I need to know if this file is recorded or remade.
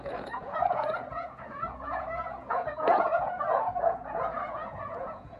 remade